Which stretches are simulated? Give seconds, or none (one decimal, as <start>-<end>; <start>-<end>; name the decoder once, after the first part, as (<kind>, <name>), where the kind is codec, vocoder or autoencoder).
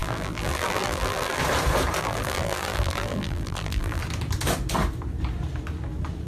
0.0-1.4 (vocoder, BigVGAN v2); 2.0-4.0